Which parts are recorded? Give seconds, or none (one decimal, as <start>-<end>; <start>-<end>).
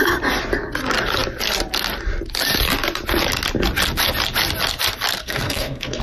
0.0-5.2